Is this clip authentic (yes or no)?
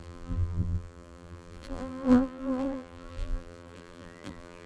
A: no